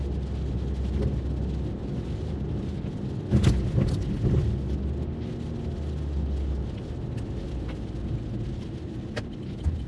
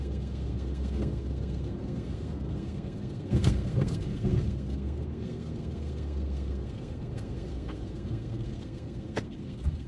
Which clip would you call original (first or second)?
first